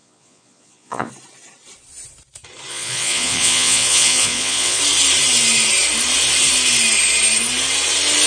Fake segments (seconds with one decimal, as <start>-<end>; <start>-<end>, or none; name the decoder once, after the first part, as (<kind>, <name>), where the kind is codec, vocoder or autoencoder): 0.0-1.1 (vocoder, Vocos); 2.7-4.8